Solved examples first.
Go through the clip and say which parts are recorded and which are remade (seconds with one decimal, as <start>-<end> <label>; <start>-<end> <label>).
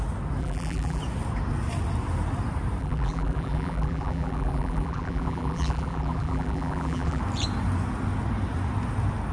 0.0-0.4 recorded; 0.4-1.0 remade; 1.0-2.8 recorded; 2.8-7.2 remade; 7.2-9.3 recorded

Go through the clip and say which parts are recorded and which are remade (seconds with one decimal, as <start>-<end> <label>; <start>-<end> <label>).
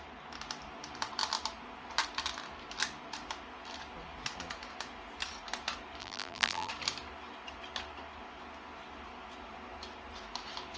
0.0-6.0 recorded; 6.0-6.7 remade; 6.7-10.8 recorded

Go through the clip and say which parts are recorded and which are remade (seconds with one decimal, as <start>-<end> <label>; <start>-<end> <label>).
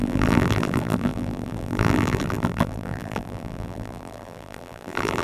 0.0-5.2 remade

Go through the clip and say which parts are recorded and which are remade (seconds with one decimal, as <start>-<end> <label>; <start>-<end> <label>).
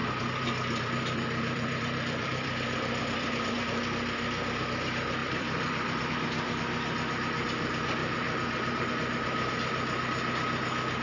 0.0-3.5 remade; 3.5-5.2 recorded; 5.2-6.1 remade; 6.1-8.0 recorded; 8.0-8.9 remade; 8.9-11.0 recorded